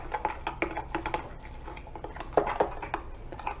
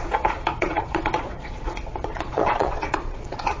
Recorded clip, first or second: first